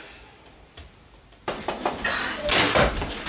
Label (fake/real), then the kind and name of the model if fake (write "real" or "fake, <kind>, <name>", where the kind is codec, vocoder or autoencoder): fake, vocoder, BigVGAN v2